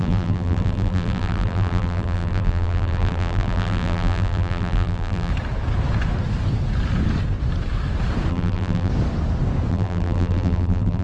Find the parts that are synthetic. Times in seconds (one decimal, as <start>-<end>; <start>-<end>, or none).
0.0-5.3; 8.3-8.9; 9.7-11.0